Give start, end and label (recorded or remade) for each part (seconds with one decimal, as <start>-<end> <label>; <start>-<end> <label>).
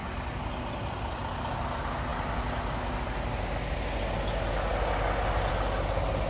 0.0-6.3 recorded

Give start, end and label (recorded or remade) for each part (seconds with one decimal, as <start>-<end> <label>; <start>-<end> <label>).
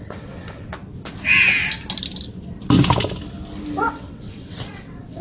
0.0-0.7 remade; 0.7-3.8 recorded; 3.8-5.2 remade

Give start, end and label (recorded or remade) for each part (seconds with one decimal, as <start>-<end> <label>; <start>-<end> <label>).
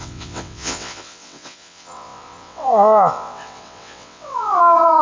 0.0-5.0 remade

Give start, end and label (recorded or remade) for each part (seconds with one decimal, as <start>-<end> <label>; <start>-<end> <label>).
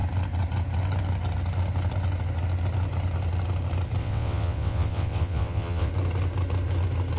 0.0-4.0 recorded; 4.0-5.9 remade; 5.9-7.2 recorded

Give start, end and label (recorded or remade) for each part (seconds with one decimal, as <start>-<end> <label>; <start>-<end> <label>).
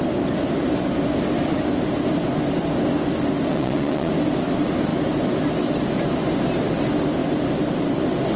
0.0-3.5 recorded; 3.5-4.1 remade; 4.1-8.4 recorded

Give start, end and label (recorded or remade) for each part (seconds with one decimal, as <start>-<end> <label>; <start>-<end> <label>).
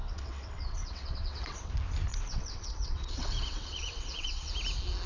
0.0-1.7 remade; 1.7-2.1 recorded; 2.1-4.5 remade; 4.5-5.1 recorded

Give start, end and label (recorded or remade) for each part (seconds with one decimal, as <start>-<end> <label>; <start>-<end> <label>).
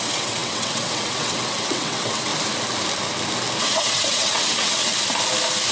0.0-2.3 remade; 2.3-3.6 recorded; 3.6-4.9 remade; 4.9-5.7 recorded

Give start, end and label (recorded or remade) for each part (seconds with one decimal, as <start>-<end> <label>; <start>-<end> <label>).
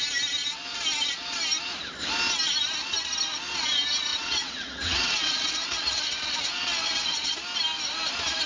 0.0-4.1 recorded; 4.1-7.3 remade; 7.3-8.5 recorded